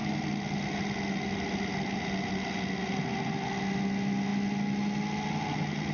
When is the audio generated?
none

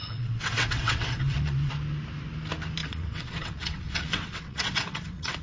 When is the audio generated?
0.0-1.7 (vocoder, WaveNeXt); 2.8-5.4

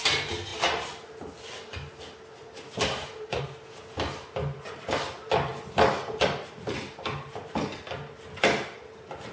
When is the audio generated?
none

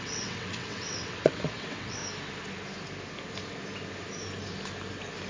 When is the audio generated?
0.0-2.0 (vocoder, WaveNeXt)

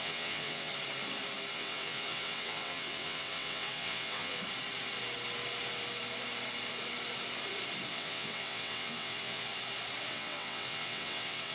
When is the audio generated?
0.0-0.7 (vocoder, WaveNeXt); 1.5-4.4; 7.9-9.5; 10.1-11.5

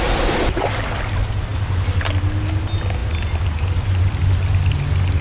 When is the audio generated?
none

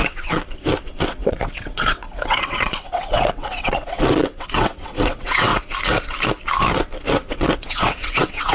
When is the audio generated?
0.0-0.4 (vocoder, WaveNeXt); 1.0-5.5; 7.3-8.5

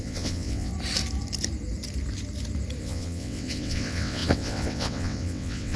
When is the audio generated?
0.0-0.7 (vocoder, WaveNeXt); 2.8-5.8